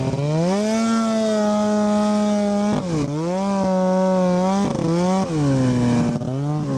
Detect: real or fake real